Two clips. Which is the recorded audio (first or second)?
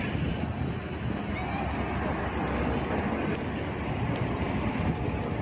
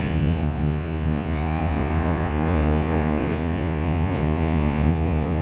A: first